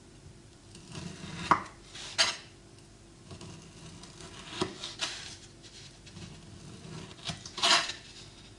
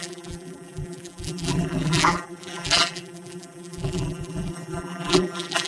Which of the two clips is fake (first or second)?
second